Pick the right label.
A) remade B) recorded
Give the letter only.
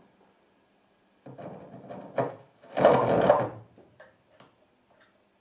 B